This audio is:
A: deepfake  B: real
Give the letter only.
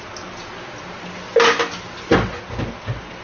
B